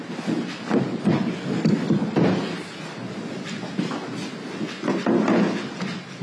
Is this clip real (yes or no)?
yes